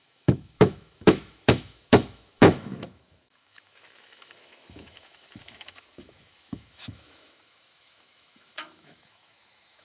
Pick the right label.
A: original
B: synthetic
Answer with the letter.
B